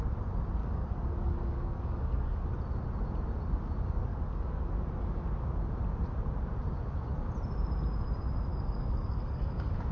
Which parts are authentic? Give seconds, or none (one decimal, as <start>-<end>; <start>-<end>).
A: 0.0-0.6; 2.5-4.1; 4.7-8.5